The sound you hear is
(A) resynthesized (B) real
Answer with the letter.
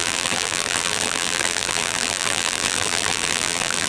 A